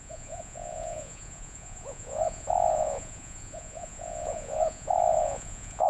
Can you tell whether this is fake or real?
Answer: fake